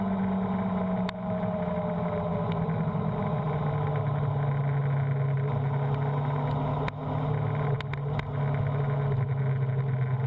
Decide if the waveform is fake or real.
real